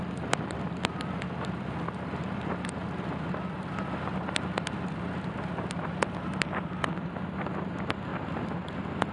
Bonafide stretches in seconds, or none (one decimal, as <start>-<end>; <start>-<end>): 2.8-6.5; 8.1-9.1